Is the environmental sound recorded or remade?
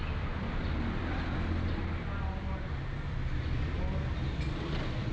recorded